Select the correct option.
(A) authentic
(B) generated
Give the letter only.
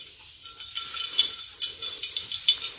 A